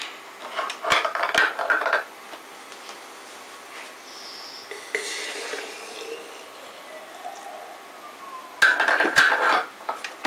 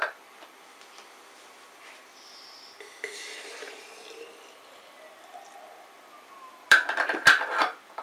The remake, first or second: second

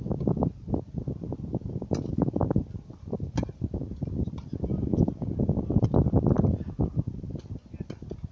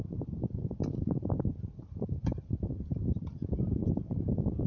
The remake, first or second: second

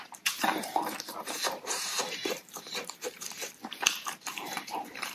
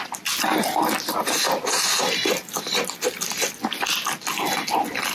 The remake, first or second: first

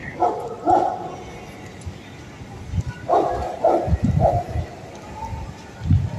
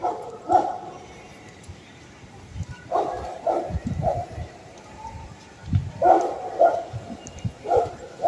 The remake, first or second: second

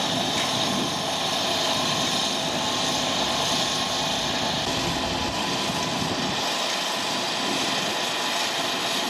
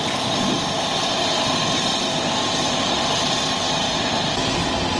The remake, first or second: second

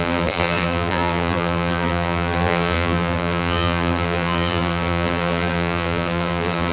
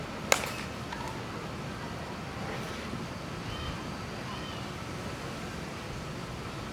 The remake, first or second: first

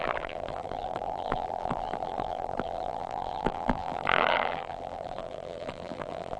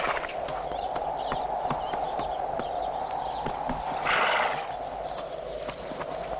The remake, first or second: first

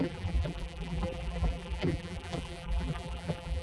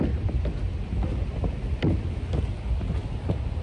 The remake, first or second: first